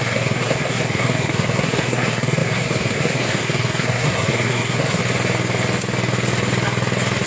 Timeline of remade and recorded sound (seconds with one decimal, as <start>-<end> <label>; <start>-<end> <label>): 0.0-5.0 remade; 5.0-7.3 recorded